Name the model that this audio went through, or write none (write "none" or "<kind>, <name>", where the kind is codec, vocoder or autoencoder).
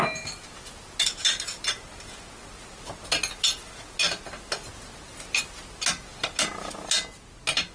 none